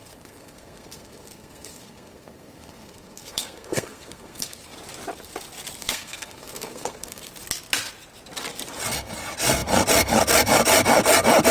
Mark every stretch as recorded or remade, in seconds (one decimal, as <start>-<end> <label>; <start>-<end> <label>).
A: 0.0-4.6 remade; 4.6-5.8 recorded; 5.8-7.3 remade; 7.3-11.5 recorded